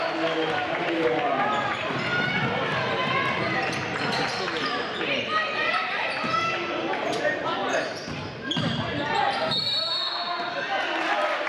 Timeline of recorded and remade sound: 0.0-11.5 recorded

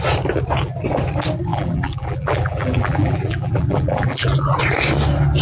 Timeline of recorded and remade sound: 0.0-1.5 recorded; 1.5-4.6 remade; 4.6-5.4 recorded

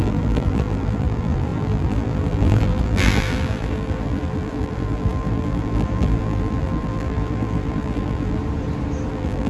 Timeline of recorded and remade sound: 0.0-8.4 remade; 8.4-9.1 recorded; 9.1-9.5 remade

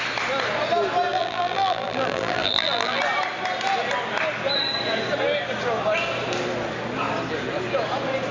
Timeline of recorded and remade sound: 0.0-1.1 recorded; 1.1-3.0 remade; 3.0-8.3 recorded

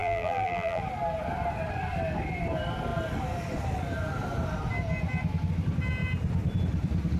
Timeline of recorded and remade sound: 0.0-0.8 remade; 0.8-7.2 recorded

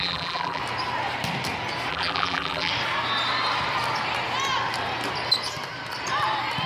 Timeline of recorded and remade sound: 0.0-0.6 remade; 0.6-1.9 recorded; 1.9-2.7 remade; 2.7-6.7 recorded

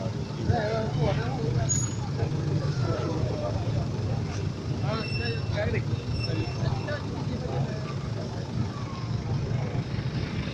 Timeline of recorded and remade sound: 0.0-2.8 recorded; 2.8-4.1 remade; 4.1-10.5 recorded